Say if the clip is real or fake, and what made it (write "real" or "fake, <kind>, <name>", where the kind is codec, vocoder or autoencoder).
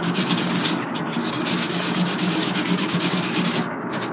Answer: fake, codec, DAC